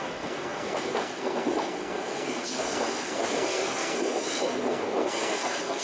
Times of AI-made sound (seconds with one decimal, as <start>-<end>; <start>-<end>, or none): 0.0-5.8